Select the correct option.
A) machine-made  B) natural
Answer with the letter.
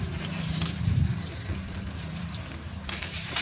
A